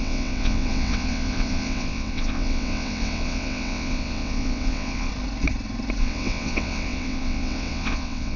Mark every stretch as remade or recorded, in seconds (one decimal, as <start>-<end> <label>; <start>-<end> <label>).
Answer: 0.0-5.1 remade; 5.1-6.0 recorded; 6.0-8.4 remade